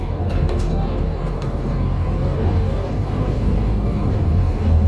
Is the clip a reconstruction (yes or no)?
yes